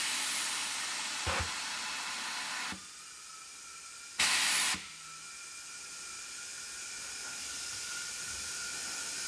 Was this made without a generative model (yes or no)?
yes